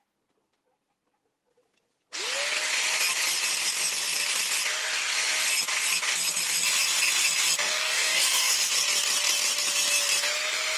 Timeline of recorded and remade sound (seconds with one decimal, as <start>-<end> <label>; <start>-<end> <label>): 0.0-7.6 recorded; 7.6-8.7 remade; 8.7-10.8 recorded